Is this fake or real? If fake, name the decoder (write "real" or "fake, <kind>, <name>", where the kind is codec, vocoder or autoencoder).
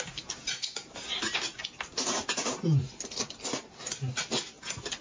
real